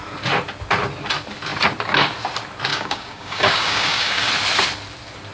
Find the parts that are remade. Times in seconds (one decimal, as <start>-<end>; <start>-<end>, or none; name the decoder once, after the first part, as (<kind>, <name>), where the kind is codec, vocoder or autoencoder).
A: 2.7-4.3 (codec, DAC)

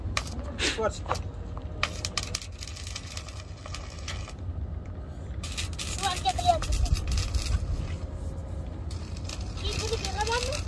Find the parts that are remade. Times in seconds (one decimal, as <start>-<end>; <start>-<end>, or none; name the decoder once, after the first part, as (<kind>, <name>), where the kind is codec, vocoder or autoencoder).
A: none

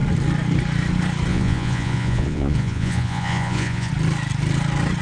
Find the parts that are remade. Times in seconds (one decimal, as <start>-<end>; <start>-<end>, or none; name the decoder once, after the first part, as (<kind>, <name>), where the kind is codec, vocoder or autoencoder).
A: 1.3-3.9 (vocoder, Vocos)

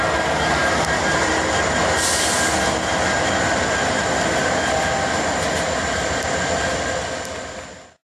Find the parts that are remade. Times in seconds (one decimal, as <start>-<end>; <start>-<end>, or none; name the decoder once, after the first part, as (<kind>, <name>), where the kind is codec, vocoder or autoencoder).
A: 0.6-1.3 (vocoder, BigVGAN v2)

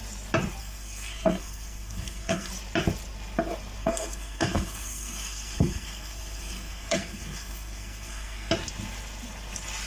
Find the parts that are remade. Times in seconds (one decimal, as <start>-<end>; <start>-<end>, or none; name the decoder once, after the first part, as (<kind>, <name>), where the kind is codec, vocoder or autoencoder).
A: 0.6-2.5 (codec, SNAC); 3.8-8.5

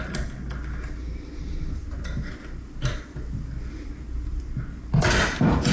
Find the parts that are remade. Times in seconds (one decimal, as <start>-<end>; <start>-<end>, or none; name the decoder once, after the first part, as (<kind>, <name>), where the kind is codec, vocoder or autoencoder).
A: none

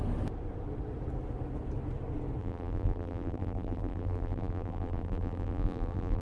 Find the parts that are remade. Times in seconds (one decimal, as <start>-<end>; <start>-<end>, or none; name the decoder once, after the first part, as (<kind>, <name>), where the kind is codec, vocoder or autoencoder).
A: 2.4-6.2 (vocoder, BigVGAN v2)